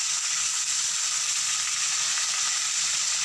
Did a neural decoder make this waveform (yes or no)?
no